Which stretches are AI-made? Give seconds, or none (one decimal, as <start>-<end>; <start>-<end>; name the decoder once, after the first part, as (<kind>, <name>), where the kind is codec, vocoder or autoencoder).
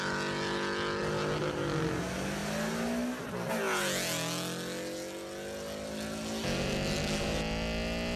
none